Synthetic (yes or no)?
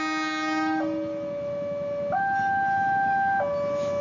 no